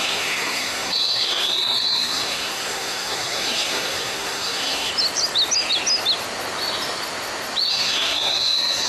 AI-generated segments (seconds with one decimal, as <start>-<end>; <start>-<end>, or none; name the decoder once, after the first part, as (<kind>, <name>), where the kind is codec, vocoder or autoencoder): 0.0-4.9 (codec, SNAC); 7.7-8.9